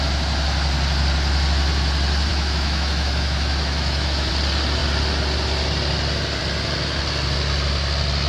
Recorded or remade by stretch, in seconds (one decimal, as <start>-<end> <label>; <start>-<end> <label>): 0.0-2.3 recorded; 2.3-4.3 remade; 4.3-8.3 recorded